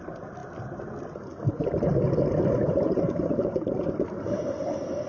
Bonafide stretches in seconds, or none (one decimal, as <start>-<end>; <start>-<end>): 0.0-5.1